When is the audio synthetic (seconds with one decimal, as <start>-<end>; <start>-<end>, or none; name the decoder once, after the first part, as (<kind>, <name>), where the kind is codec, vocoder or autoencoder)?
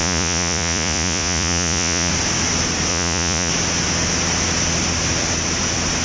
0.0-2.1 (vocoder, Vocos); 2.9-3.5